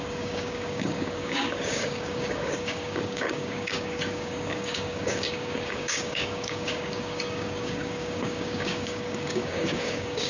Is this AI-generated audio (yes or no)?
yes